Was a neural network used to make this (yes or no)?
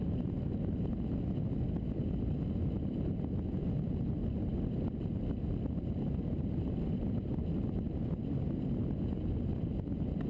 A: no